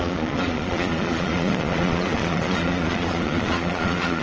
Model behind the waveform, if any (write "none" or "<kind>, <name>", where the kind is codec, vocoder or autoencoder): vocoder, Vocos